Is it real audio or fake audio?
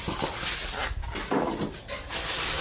real